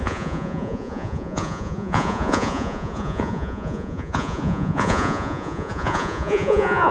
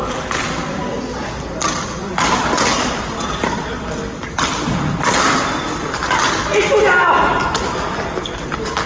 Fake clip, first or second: first